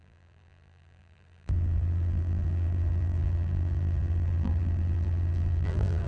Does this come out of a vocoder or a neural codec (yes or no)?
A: yes